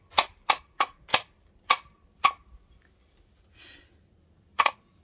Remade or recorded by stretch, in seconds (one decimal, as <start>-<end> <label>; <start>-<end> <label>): 0.0-5.0 recorded